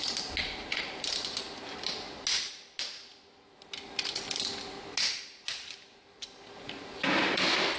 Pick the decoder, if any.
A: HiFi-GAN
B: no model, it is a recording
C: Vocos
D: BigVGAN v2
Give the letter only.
B